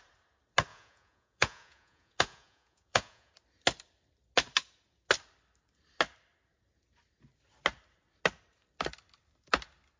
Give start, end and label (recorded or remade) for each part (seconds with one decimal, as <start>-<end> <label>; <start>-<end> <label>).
0.0-0.7 recorded; 0.7-3.3 remade; 3.3-10.0 recorded